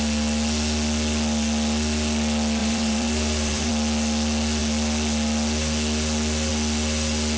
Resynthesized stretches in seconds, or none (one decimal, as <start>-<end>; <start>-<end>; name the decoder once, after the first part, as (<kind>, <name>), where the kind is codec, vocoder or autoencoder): 2.6-3.7 (vocoder, BigVGAN v2)